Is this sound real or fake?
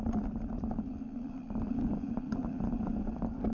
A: real